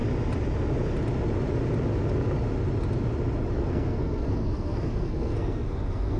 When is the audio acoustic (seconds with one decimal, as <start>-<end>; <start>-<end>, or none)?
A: 0.0-3.7